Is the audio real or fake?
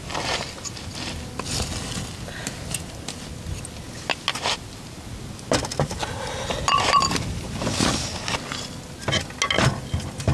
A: real